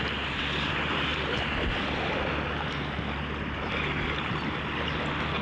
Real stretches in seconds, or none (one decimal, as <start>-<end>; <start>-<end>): 0.0-5.4